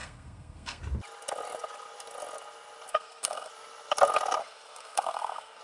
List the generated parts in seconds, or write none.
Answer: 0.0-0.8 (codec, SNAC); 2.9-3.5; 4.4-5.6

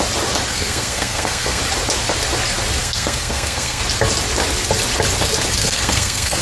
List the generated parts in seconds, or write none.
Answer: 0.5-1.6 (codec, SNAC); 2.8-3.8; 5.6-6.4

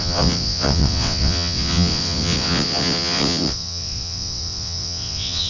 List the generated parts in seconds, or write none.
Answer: 0.0-5.5 (vocoder, WaveNeXt)

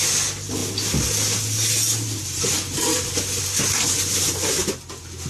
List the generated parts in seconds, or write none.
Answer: none

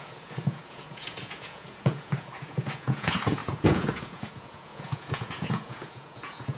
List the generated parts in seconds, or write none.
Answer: 0.0-6.6 (vocoder, Vocos)